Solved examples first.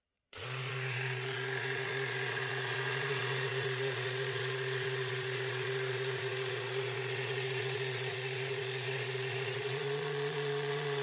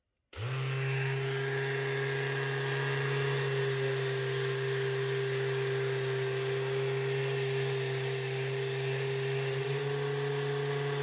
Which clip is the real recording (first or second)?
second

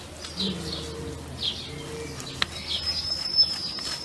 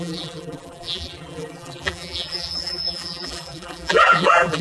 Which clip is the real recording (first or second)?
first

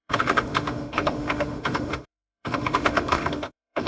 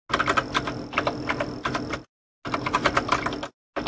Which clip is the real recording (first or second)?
second